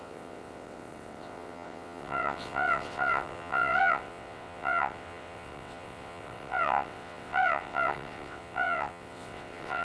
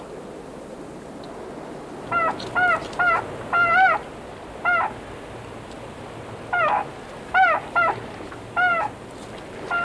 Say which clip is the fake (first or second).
first